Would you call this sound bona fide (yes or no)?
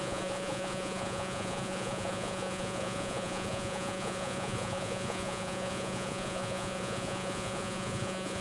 no